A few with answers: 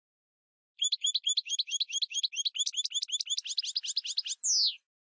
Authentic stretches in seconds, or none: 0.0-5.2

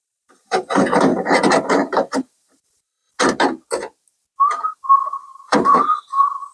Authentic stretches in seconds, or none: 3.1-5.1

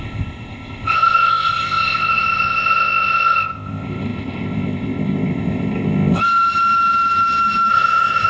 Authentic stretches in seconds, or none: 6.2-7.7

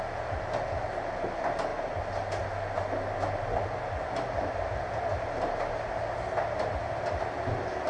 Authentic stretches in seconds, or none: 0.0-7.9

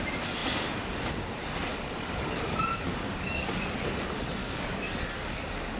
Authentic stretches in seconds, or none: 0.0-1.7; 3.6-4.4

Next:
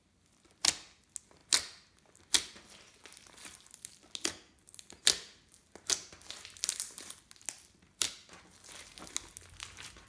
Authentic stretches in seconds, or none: 0.0-10.1